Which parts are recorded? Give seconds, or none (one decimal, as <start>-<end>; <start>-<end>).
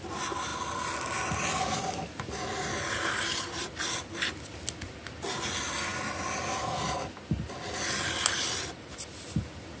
0.0-9.8